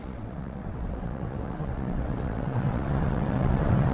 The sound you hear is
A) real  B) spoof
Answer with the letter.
B